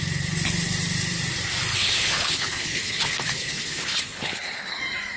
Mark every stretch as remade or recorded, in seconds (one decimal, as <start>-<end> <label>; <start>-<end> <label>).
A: 0.0-1.7 recorded; 1.7-4.8 remade; 4.8-5.2 recorded